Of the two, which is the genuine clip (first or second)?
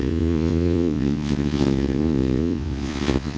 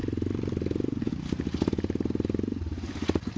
second